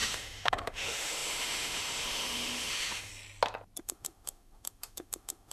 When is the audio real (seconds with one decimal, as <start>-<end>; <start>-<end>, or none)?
3.1-3.8